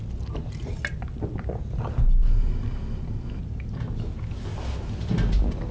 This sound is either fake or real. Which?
real